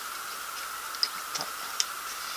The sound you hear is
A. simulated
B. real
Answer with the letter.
B